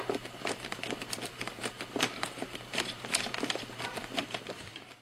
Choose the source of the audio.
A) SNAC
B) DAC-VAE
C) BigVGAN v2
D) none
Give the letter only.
C